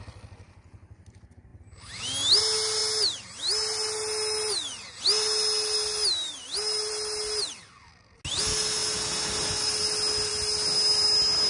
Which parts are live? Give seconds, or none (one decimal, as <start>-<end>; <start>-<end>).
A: 0.0-11.5

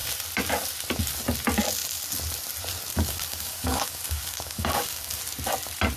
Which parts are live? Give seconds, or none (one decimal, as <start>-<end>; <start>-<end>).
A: 0.0-2.9; 5.2-6.0

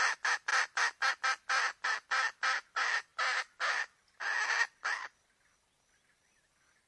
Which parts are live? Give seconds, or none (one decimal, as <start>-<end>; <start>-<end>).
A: 0.0-6.9